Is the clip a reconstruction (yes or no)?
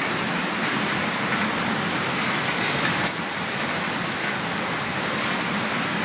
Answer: no